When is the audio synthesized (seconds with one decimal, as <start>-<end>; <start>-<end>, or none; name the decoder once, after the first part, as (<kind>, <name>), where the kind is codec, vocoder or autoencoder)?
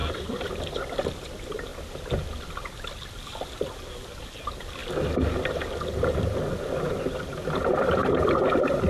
0.0-1.7 (vocoder, BigVGAN v2); 3.7-4.8; 7.1-8.9